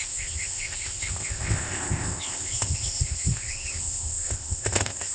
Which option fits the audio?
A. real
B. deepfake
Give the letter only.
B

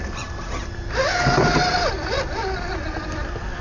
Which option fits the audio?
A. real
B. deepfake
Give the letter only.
A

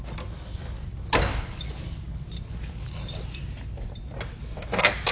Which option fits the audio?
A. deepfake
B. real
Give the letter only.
B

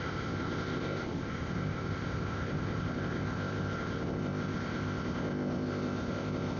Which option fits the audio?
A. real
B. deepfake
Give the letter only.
B